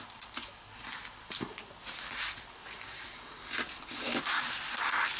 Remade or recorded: recorded